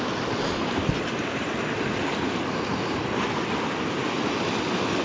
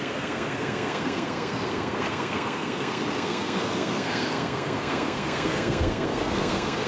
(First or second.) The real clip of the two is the first